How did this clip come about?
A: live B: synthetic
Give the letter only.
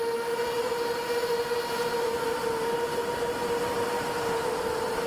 A